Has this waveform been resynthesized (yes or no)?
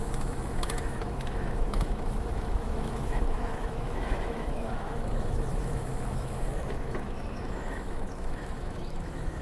yes